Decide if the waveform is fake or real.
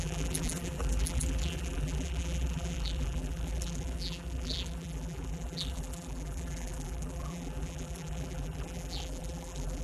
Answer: fake